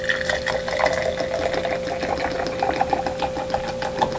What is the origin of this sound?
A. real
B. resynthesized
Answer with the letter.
A